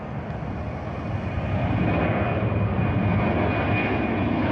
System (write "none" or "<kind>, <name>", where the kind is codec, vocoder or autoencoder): none